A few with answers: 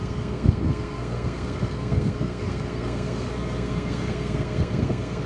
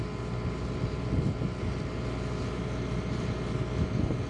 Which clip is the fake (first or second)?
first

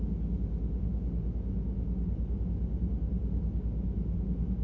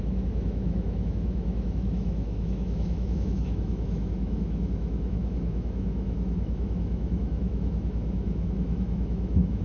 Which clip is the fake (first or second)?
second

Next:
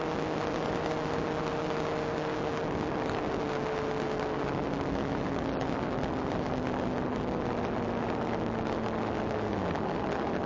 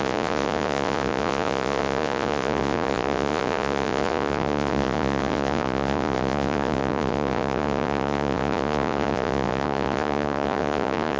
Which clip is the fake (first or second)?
second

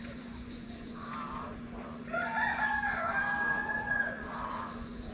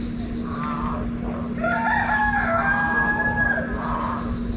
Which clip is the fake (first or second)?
first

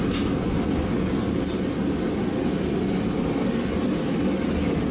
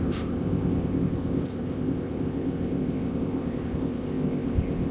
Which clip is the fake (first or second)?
second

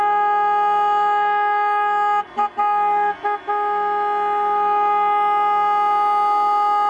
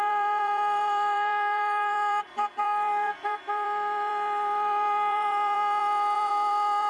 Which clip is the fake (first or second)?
second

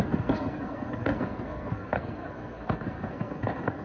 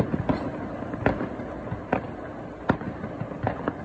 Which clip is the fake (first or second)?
first